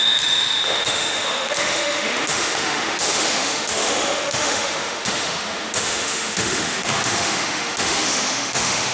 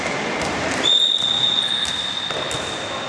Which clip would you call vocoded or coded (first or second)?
first